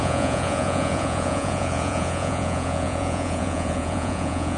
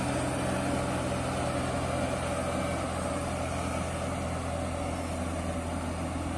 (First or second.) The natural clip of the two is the second